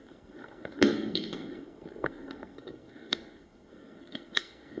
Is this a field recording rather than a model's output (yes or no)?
no